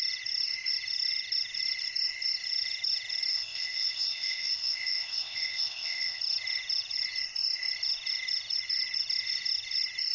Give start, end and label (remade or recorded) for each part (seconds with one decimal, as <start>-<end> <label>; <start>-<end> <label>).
0.0-3.3 recorded; 3.3-6.2 remade; 6.2-10.1 recorded